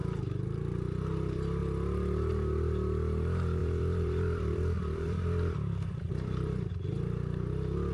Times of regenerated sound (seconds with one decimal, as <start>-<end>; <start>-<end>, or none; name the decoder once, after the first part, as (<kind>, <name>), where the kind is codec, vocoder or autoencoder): 0.0-1.0 (vocoder, BigVGAN v2); 3.6-6.7